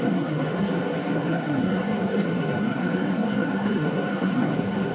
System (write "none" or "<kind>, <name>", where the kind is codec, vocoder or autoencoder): codec, SNAC